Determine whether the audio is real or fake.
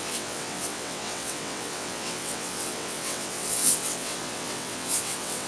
fake